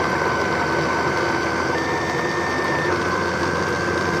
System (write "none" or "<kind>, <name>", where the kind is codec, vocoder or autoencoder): vocoder, BigVGAN v2